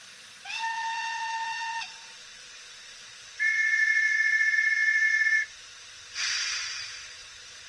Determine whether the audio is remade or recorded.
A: remade